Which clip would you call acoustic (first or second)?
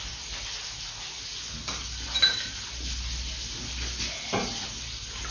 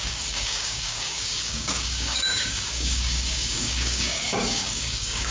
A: first